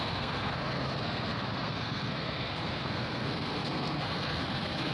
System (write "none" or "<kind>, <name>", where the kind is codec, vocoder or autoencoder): codec, SNAC